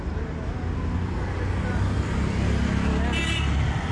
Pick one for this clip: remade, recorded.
recorded